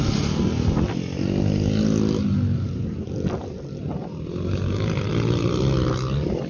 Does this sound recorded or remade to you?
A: recorded